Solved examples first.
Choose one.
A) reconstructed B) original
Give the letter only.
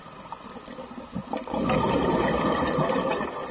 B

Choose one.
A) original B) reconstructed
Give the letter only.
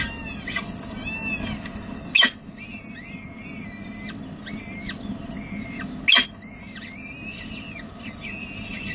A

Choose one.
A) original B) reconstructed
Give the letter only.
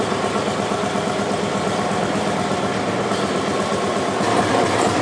B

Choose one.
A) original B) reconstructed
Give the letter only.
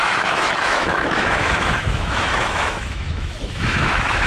B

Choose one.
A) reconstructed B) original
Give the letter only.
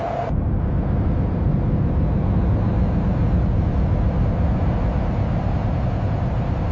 B